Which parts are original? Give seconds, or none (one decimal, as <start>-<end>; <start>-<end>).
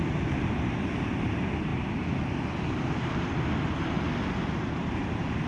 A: 0.0-5.5